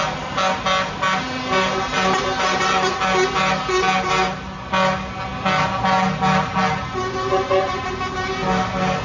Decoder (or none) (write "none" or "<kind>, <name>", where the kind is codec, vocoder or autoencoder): none